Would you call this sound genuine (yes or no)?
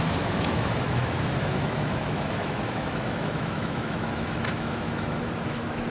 no